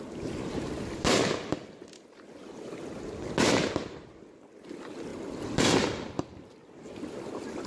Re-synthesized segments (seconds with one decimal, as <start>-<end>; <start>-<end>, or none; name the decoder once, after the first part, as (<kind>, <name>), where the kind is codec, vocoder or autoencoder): none